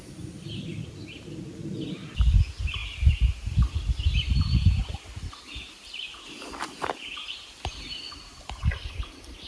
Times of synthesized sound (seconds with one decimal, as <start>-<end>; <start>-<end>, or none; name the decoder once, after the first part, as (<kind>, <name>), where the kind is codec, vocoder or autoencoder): none